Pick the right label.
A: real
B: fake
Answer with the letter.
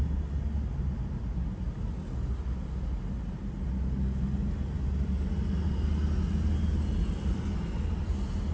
A